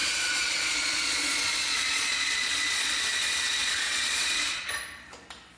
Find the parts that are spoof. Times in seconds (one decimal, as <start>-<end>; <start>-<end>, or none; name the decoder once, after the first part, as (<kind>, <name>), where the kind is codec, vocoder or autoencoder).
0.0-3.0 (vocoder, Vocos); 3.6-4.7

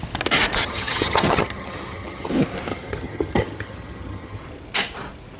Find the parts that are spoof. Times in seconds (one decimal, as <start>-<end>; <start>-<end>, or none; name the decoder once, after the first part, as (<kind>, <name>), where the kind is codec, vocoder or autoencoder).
0.6-2.3 (vocoder, HiFi-GAN); 2.7-4.4

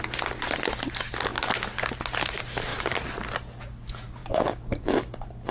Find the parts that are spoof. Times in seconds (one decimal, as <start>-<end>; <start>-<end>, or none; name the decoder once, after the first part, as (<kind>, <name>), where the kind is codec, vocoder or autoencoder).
4.2-4.8 (codec, DAC)

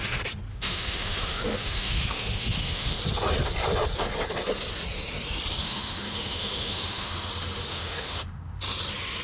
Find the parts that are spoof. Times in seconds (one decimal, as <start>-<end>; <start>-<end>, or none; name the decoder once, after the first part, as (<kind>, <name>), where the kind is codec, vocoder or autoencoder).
0.5-3.0 (autoencoder, DAC-VAE); 5.6-7.3; 7.7-8.6

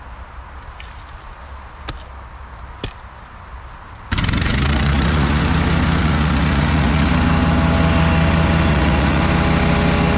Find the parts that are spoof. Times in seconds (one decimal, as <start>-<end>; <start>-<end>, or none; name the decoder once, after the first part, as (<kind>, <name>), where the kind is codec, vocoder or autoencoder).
4.2-5.4 (vocoder, Vocos); 6.0-7.1; 8.7-9.2

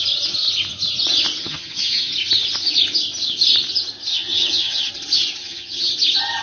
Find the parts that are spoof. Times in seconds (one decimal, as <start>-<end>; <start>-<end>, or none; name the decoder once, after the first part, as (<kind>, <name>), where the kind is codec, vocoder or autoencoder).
1.4-2.1 (vocoder, HiFi-GAN); 4.1-4.9; 5.4-5.9

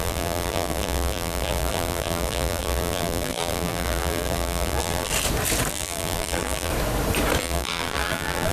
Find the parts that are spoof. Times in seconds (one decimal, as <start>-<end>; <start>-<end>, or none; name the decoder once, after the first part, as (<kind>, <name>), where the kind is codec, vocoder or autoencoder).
0.0-5.1 (vocoder, BigVGAN v2); 5.7-6.7; 7.4-8.5

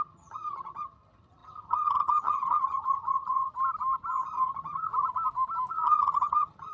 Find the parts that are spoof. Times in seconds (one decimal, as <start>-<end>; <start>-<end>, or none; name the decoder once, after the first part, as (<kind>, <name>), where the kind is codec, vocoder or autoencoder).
0.0-3.5 (vocoder, HiFi-GAN); 4.1-4.9; 5.7-6.7